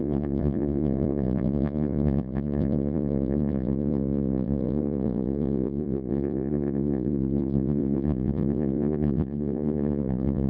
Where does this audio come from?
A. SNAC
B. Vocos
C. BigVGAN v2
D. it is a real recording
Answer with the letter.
B